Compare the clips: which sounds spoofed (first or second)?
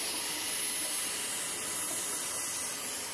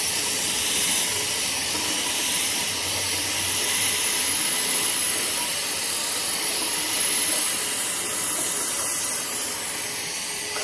second